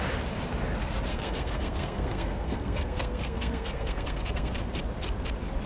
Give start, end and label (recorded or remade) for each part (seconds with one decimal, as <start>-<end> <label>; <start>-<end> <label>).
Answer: 0.0-1.1 recorded; 1.1-4.5 remade; 4.5-5.7 recorded